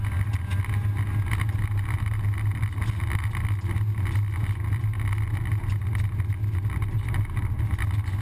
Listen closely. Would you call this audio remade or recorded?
recorded